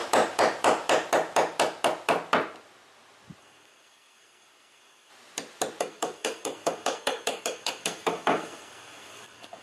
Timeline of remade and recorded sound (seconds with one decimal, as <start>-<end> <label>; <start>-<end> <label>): 0.0-3.4 recorded; 3.4-5.1 remade; 5.1-5.8 recorded; 5.8-9.6 remade